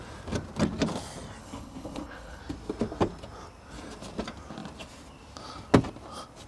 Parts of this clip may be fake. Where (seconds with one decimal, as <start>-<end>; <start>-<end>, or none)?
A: 1.4-2.4

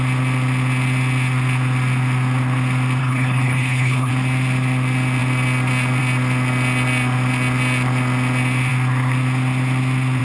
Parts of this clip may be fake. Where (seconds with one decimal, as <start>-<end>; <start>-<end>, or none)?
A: 3.0-4.1

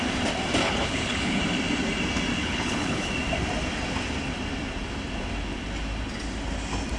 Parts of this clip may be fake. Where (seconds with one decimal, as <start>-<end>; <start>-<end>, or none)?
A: 0.6-1.4; 2.4-3.1

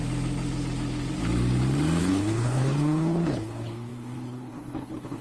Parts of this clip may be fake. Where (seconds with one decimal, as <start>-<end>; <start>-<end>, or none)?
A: 2.0-5.2

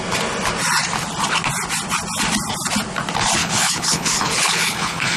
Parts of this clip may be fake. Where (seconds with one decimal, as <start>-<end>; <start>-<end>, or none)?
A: 3.4-5.2